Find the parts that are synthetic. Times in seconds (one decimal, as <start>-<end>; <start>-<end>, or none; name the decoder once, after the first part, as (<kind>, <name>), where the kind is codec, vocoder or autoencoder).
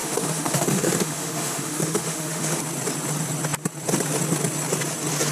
0.0-2.6 (autoencoder, DAC-VAE)